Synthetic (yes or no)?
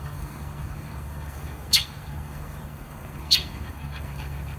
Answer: yes